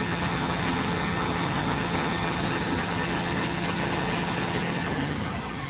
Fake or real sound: fake